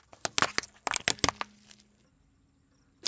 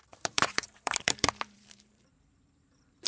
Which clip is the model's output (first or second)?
second